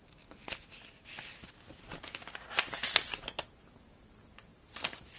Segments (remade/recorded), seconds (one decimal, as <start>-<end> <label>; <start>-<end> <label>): 0.0-5.2 recorded